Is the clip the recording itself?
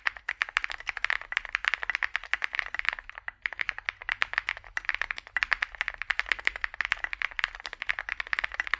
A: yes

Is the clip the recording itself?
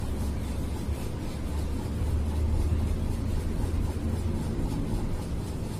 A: yes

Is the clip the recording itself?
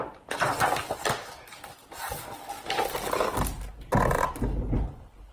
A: yes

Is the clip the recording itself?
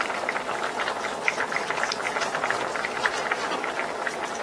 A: yes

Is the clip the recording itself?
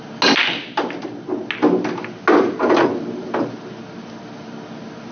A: yes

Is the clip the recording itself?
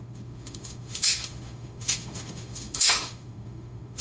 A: no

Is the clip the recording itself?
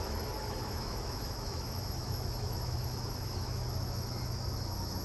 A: no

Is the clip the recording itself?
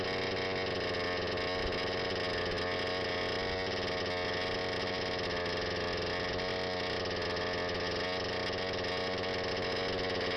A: yes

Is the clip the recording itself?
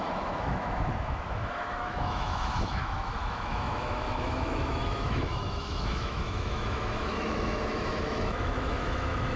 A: no